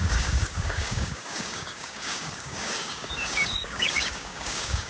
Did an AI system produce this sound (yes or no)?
yes